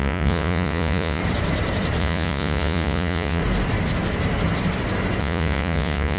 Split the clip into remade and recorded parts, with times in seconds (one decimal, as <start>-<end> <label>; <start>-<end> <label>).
0.0-1.2 remade; 1.2-2.0 recorded; 2.0-3.4 remade; 3.4-5.2 recorded; 5.2-6.2 remade